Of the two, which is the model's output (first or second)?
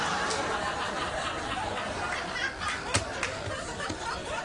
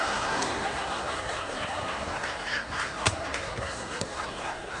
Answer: second